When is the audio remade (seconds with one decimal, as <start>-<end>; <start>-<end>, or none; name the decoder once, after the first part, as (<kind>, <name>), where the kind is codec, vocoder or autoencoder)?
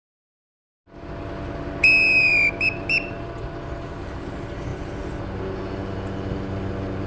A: none